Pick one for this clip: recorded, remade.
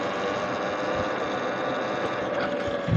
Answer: recorded